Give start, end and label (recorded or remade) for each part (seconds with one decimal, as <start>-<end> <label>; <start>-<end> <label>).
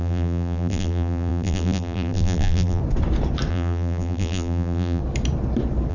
0.0-2.8 remade; 2.8-3.5 recorded; 3.5-5.0 remade; 5.0-5.9 recorded